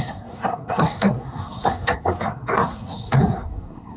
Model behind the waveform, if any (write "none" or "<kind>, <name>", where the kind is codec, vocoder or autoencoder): codec, SNAC